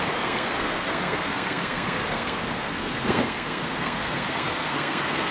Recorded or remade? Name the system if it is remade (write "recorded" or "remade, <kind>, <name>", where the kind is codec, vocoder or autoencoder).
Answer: remade, codec, SNAC